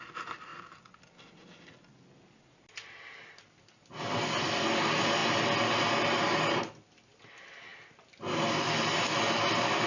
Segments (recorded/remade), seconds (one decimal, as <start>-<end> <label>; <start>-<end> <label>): 0.0-9.9 recorded